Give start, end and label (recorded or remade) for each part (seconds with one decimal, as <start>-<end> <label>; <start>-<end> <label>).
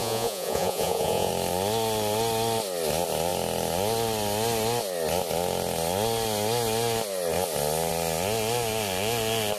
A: 0.0-1.3 remade; 1.3-9.6 recorded